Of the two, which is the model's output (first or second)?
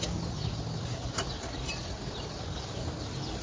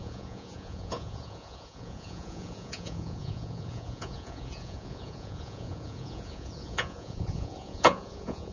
second